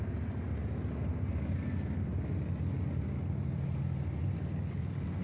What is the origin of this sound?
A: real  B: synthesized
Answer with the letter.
A